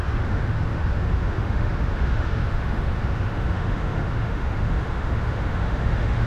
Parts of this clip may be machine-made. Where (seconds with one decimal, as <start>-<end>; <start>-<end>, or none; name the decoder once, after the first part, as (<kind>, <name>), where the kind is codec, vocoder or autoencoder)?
0.0-6.3 (autoencoder, DAC-VAE)